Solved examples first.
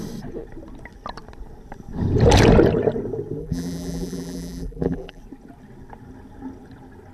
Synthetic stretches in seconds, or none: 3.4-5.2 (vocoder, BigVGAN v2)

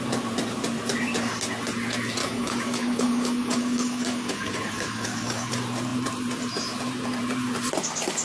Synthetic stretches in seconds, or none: 2.2-5.5 (codec, DAC)

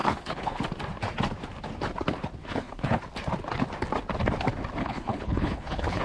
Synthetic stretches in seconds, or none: 0.0-0.6 (codec, HILCodec); 2.4-3.0; 4.8-6.0